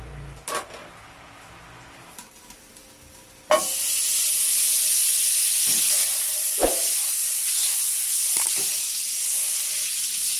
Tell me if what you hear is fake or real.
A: real